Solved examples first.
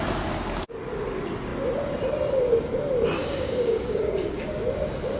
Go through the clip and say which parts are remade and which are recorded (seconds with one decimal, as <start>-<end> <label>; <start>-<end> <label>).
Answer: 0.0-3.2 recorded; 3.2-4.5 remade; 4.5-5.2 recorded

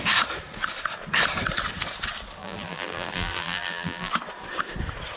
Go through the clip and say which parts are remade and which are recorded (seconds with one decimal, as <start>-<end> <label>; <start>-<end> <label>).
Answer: 0.0-2.4 recorded; 2.4-4.1 remade; 4.1-5.2 recorded

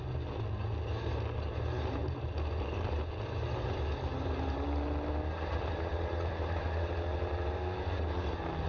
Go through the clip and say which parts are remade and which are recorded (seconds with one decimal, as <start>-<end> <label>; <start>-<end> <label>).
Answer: 0.0-8.7 recorded

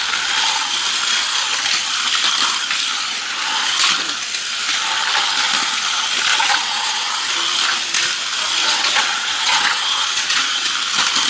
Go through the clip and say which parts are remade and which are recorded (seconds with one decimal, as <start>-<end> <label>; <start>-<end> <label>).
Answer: 0.0-6.3 recorded; 6.3-7.3 remade; 7.3-8.6 recorded; 8.6-10.7 remade; 10.7-11.3 recorded

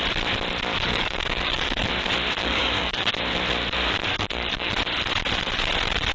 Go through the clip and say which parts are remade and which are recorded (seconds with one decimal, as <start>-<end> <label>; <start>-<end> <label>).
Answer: 0.0-0.7 recorded; 0.7-1.9 remade; 1.9-2.4 recorded; 2.4-3.1 remade; 3.1-4.1 recorded; 4.1-4.7 remade; 4.7-6.1 recorded